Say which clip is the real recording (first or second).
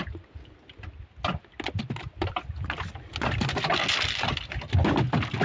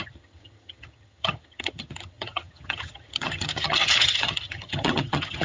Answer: first